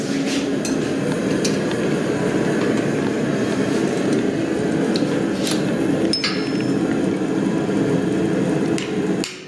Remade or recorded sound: recorded